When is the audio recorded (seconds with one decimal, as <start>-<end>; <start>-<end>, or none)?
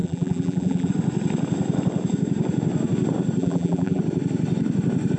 0.9-3.4; 4.0-5.2